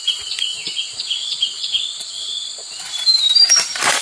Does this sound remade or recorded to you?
remade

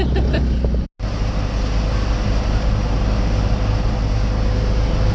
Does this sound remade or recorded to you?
recorded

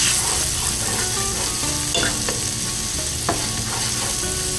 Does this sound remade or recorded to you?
recorded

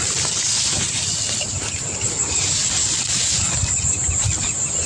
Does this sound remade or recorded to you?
remade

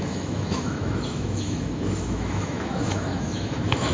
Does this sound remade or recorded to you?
remade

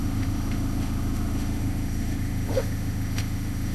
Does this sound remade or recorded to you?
remade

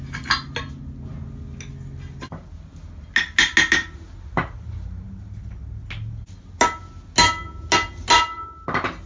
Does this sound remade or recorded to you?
recorded